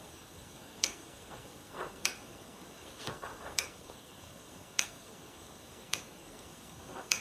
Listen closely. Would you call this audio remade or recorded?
remade